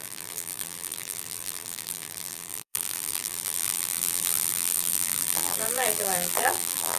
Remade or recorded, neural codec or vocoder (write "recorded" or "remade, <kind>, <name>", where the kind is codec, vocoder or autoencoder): remade, vocoder, BigVGAN v2